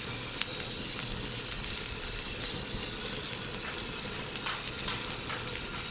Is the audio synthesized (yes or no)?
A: no